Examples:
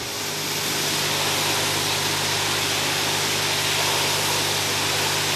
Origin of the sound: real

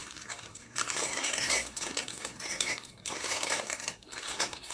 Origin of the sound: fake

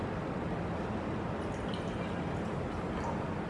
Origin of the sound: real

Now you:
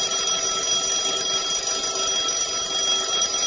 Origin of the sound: real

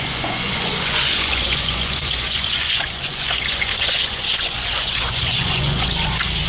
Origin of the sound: fake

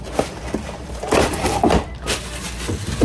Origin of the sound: real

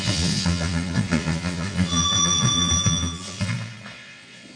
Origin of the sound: fake